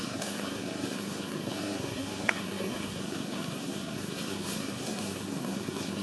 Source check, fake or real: fake